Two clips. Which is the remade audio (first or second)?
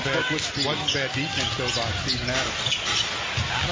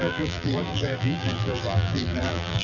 second